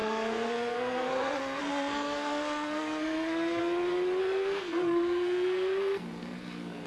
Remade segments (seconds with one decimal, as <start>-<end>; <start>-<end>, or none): 0.0-3.6; 4.2-6.9